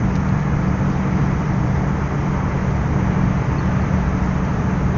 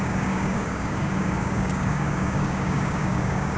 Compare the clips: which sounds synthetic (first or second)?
second